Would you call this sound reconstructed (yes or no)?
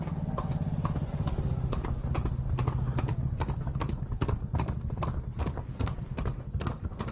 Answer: no